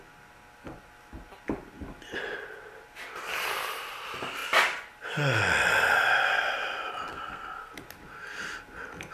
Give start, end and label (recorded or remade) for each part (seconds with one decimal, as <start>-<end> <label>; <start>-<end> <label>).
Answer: 0.0-7.1 recorded; 7.1-7.7 remade; 7.7-9.1 recorded